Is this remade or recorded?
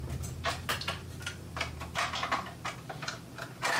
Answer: recorded